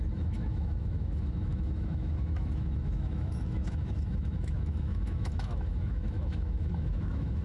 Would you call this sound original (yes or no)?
no